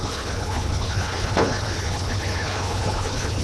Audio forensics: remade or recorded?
remade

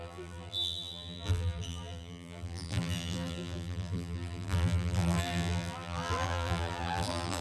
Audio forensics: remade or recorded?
remade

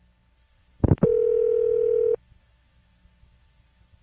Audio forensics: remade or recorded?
recorded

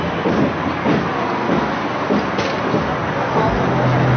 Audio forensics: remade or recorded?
recorded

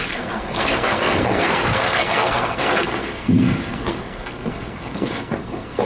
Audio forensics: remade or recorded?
remade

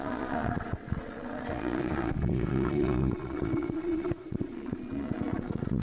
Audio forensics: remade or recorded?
remade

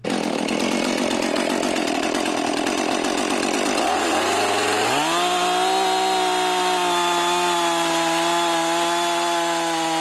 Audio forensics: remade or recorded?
recorded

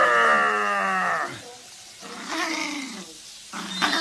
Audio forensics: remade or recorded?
recorded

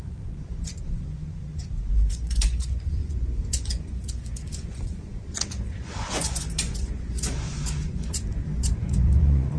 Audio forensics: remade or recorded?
remade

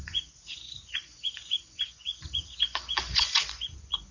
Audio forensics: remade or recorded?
remade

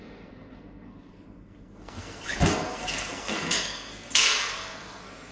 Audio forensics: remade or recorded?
remade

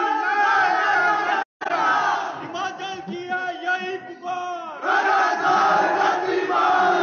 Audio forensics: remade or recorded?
recorded